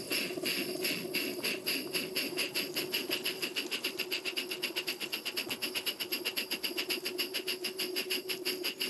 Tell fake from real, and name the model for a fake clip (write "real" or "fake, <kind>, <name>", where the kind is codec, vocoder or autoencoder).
real